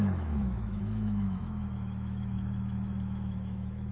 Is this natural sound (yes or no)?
no